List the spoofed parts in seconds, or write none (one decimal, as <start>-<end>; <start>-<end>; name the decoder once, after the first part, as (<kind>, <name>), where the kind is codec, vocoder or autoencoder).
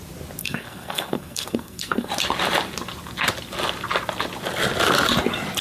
0.4-2.1 (codec, SNAC)